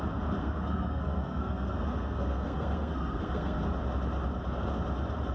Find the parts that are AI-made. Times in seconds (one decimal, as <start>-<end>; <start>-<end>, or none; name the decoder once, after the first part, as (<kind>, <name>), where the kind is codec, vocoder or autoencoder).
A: 0.4-3.6 (codec, SNAC)